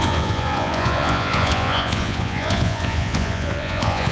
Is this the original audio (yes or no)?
no